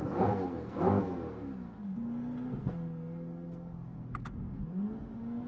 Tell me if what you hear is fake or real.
fake